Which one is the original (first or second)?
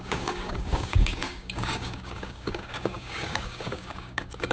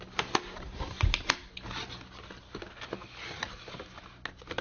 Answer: second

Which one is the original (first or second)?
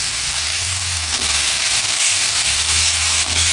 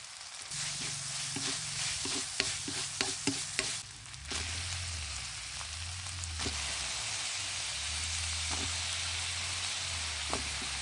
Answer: second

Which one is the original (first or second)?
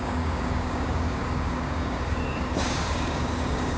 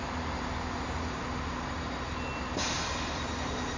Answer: second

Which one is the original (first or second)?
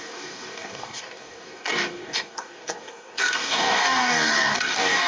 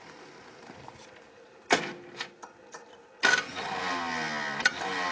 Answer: second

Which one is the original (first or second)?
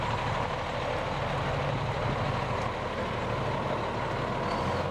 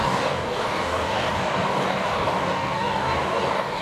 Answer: first